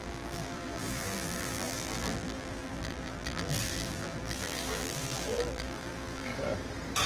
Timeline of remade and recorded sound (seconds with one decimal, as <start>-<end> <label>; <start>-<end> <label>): 0.0-6.3 remade; 6.3-7.1 recorded